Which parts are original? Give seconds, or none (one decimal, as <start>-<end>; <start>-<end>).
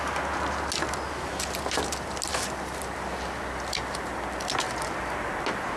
0.0-5.8